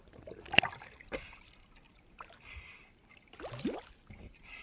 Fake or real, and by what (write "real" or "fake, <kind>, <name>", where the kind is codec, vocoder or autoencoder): real